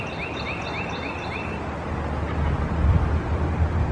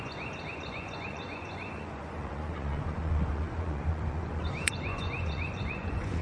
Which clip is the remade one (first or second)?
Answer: second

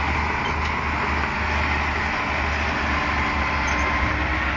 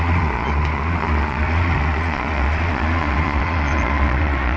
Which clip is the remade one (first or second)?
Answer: second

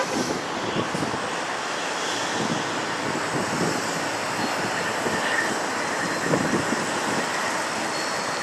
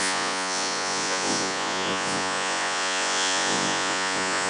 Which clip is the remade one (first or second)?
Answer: second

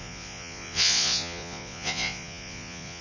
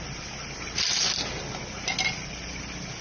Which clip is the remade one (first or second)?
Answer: first